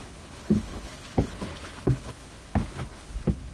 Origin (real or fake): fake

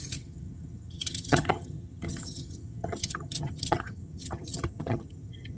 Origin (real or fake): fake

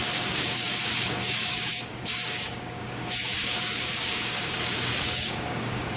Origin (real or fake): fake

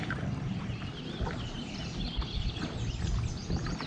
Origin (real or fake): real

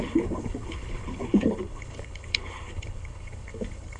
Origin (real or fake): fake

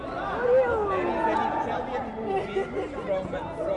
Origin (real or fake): real